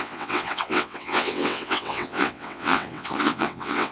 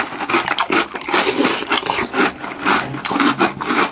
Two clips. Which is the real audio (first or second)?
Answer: second